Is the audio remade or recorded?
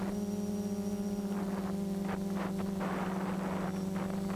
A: recorded